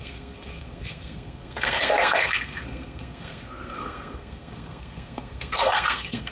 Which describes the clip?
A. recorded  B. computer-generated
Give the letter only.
B